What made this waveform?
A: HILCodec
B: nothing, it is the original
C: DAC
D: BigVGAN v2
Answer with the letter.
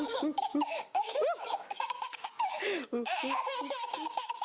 C